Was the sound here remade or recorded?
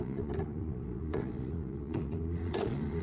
remade